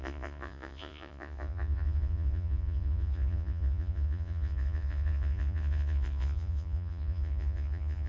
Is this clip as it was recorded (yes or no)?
no